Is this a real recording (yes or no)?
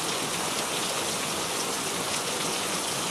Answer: no